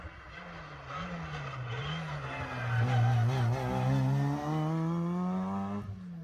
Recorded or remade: recorded